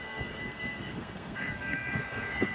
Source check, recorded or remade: remade